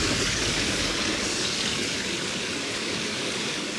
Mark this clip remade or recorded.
remade